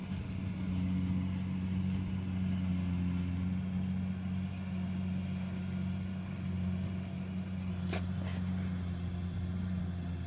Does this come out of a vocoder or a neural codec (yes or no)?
no